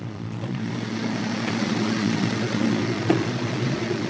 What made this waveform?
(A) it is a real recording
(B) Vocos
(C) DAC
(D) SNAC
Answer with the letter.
B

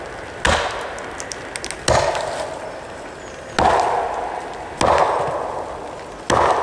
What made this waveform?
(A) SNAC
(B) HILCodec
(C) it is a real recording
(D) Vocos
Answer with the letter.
C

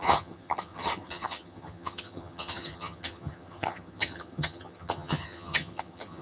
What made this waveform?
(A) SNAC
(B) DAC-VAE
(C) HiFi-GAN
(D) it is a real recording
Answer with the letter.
C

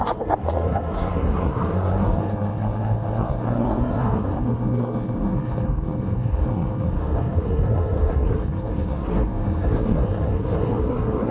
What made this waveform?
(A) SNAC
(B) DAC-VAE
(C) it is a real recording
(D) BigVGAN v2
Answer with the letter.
A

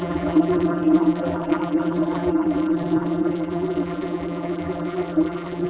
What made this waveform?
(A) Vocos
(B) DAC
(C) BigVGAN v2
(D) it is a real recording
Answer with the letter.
C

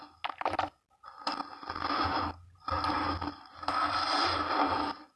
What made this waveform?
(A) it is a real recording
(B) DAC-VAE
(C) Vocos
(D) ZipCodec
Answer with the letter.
A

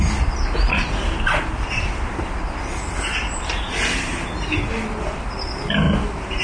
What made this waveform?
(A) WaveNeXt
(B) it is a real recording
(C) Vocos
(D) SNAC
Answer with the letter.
B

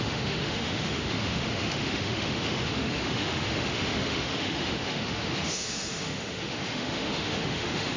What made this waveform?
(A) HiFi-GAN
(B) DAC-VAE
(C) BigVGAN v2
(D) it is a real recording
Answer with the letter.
B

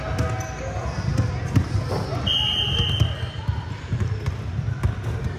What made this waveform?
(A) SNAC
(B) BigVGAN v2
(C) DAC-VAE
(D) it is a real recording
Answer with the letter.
D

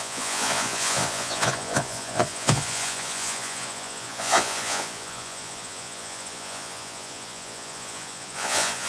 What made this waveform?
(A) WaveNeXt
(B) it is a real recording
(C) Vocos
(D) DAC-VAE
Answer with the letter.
C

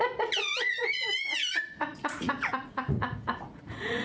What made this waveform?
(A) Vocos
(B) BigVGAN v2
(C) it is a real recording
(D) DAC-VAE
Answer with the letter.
A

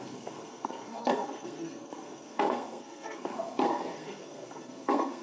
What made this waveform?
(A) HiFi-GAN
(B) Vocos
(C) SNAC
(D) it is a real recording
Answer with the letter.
C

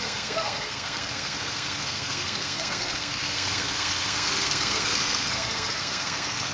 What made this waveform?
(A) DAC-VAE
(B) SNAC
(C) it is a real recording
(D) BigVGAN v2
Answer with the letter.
B